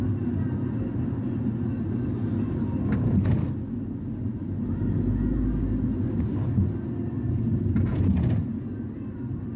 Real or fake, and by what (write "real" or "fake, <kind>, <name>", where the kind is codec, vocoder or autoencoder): real